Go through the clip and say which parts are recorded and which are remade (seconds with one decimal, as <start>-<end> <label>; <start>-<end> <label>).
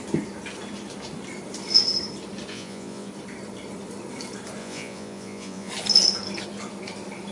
0.0-2.5 recorded; 2.5-3.1 remade; 3.1-4.6 recorded; 4.6-5.7 remade; 5.7-7.3 recorded